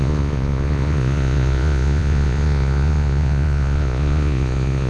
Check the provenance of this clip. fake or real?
fake